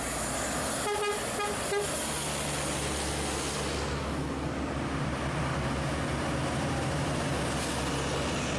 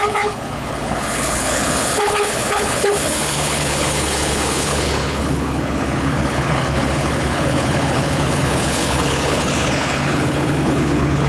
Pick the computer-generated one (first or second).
second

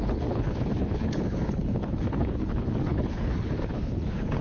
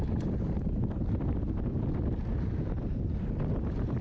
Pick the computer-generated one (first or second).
first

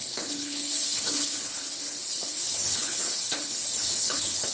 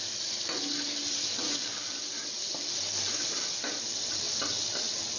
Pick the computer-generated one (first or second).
first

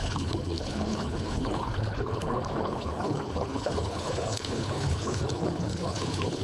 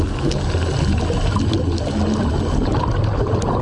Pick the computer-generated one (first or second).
first